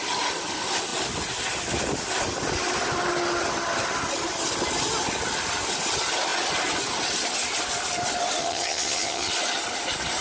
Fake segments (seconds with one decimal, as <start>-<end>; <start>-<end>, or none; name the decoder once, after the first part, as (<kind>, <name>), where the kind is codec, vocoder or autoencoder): 8.4-9.3 (vocoder, HiFi-GAN)